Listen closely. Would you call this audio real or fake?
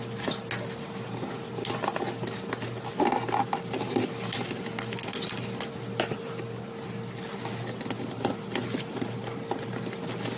real